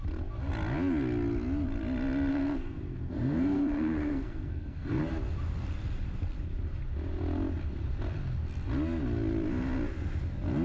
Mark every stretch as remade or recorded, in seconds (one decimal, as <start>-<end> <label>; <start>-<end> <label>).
0.0-2.3 recorded; 2.3-5.0 remade; 5.0-10.6 recorded